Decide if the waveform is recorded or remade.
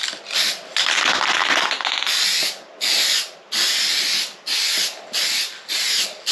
recorded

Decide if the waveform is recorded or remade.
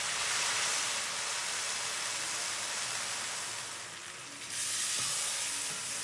recorded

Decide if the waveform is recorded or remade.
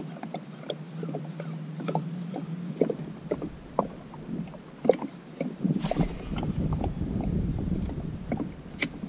recorded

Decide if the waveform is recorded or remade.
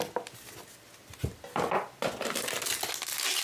recorded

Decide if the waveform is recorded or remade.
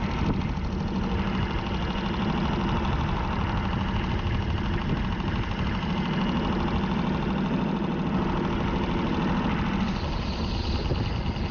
recorded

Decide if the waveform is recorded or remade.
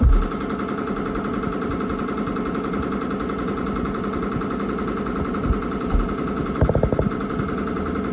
recorded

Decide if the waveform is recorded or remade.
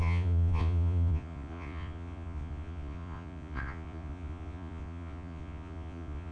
remade